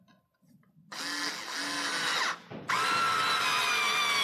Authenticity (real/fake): real